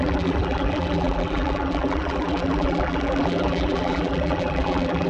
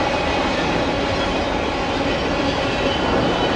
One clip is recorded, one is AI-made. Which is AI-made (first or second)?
first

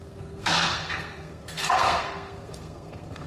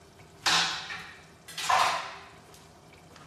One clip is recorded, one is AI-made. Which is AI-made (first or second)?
first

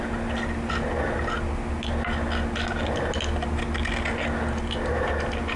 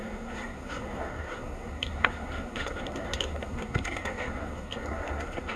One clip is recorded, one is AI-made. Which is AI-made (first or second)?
second